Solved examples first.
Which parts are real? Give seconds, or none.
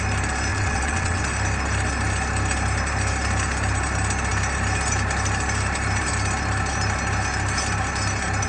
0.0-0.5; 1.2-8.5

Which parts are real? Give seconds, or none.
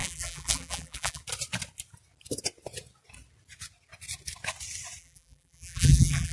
1.2-5.0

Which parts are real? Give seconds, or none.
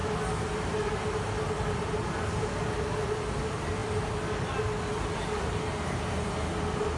0.0-7.0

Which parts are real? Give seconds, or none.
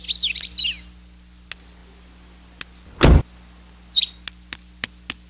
0.0-5.3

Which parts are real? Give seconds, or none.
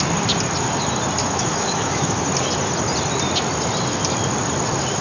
0.0-1.2; 2.2-5.0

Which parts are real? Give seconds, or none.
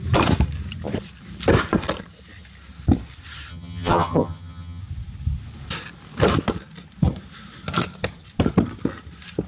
0.0-3.5; 4.8-9.5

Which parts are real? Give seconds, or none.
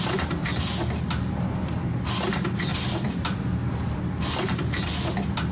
0.0-2.7; 4.5-5.5